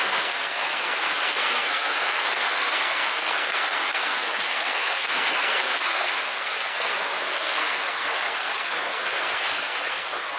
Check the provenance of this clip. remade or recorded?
remade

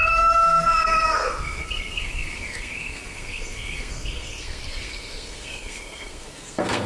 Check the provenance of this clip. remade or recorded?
remade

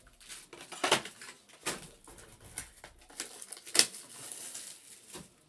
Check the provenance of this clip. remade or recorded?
recorded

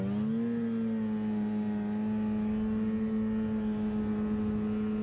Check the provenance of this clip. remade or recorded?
recorded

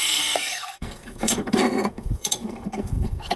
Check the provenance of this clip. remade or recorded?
remade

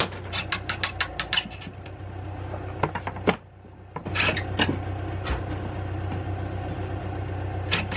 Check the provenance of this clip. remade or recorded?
recorded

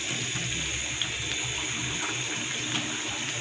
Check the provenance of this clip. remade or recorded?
recorded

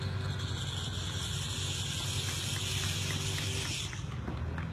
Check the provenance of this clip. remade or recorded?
recorded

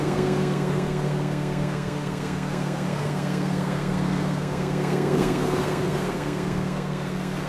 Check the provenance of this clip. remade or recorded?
remade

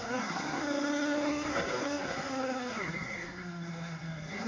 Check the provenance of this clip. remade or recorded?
remade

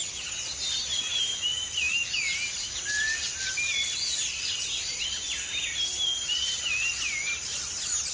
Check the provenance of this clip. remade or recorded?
recorded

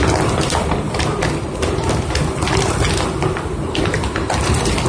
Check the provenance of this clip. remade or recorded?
recorded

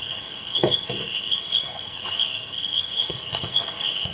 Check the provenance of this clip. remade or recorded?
remade